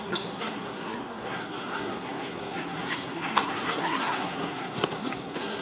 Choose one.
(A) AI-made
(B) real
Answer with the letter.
A